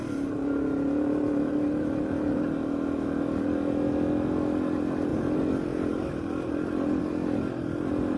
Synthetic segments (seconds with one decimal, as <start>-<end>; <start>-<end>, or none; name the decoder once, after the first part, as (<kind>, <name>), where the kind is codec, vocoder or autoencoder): none